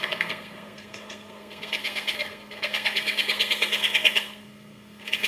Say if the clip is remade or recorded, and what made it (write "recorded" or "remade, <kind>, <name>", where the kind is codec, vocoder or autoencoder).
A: remade, codec, SNAC